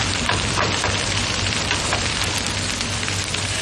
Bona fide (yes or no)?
no